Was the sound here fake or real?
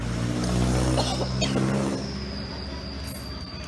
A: real